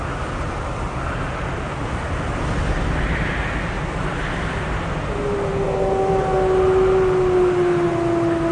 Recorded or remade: recorded